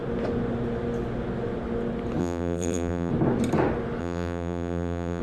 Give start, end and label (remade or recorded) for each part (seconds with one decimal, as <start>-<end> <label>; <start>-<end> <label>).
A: 0.0-2.2 recorded; 2.2-3.1 remade; 3.1-4.0 recorded; 4.0-5.2 remade